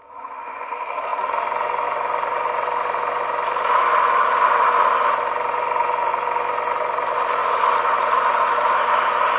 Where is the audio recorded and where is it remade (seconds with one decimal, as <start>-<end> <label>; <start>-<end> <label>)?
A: 0.0-0.7 remade; 0.7-9.4 recorded